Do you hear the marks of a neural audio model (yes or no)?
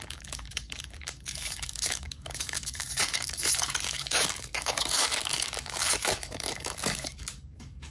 yes